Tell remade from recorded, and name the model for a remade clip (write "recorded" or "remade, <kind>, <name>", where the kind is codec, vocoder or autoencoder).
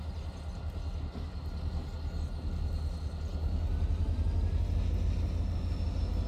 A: recorded